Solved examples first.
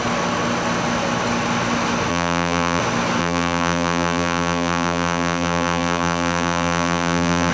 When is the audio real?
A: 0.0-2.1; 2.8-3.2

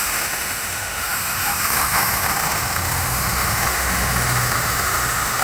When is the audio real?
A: none